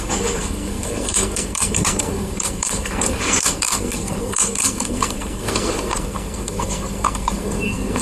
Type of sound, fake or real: fake